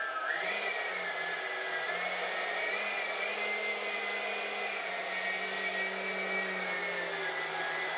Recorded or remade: recorded